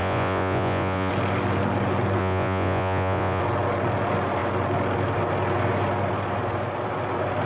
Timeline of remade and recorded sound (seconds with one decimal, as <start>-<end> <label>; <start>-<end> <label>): 0.0-1.1 remade; 1.1-2.2 recorded; 2.2-3.4 remade; 3.4-7.5 recorded